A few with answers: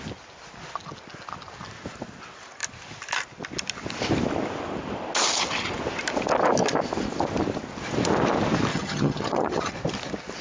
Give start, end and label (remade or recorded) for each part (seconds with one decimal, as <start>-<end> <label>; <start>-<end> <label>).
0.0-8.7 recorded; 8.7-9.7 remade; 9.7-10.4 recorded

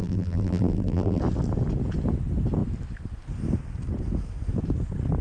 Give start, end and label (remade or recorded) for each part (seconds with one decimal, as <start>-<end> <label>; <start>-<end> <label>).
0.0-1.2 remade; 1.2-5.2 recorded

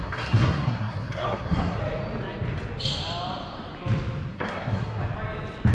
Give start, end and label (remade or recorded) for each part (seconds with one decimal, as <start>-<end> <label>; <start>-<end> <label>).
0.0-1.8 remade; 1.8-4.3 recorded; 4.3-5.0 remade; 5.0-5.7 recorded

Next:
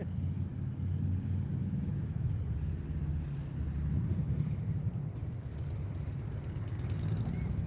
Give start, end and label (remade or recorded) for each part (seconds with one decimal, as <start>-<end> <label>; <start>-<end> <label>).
0.0-1.6 recorded; 1.6-2.3 remade; 2.3-7.7 recorded

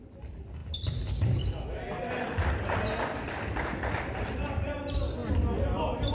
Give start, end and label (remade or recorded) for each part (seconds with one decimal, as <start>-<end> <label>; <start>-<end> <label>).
0.0-6.1 recorded

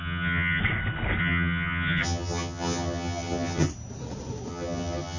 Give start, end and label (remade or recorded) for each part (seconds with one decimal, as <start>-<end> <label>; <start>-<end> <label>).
0.0-0.6 remade; 0.6-1.2 recorded; 1.2-3.7 remade; 3.7-4.5 recorded; 4.5-5.2 remade